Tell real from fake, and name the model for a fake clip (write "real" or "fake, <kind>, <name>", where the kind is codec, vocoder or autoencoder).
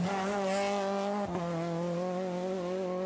real